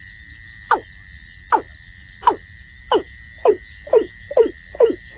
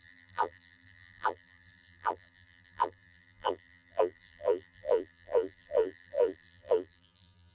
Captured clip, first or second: first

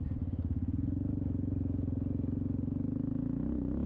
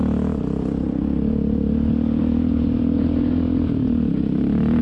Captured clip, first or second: first